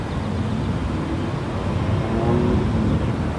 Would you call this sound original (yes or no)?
yes